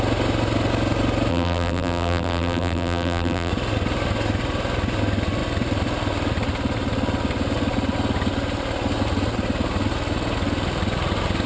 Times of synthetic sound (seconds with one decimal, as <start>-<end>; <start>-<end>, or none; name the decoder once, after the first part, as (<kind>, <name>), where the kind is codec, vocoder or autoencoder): 1.3-3.5 (vocoder, BigVGAN v2)